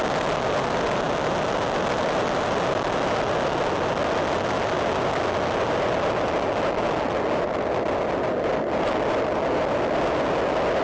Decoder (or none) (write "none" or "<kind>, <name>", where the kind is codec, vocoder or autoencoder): none